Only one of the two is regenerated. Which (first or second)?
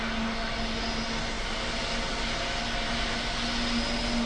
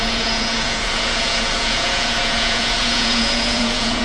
second